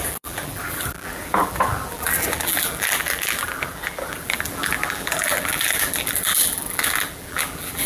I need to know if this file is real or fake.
fake